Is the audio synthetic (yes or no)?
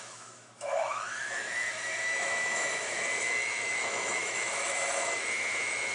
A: yes